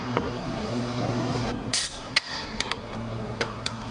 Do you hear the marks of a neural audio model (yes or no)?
yes